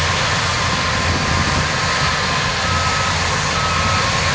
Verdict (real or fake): real